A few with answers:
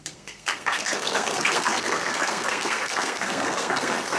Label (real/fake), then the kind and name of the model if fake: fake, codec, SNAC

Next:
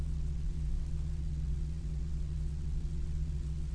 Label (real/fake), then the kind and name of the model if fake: fake, vocoder, WaveNeXt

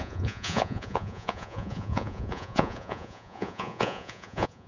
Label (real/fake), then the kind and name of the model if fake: fake, vocoder, Vocos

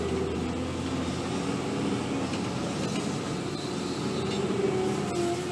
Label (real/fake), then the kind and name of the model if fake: real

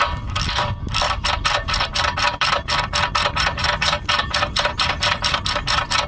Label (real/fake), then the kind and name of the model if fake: fake, vocoder, BigVGAN v2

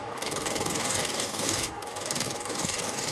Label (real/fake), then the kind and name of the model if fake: fake, codec, DAC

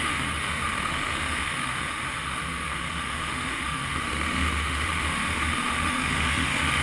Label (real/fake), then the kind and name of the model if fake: fake, autoencoder, DAC-VAE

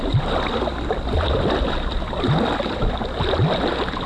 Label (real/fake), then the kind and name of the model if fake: real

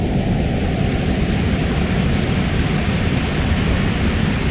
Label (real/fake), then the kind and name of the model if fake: real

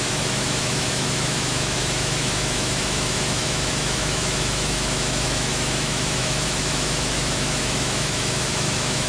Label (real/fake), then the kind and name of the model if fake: fake, autoencoder, DAC-VAE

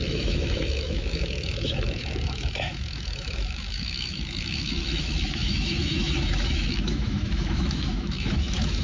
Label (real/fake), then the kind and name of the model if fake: fake, autoencoder, DAC-VAE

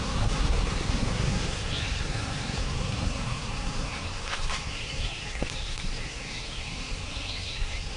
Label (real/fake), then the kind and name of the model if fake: fake, codec, SNAC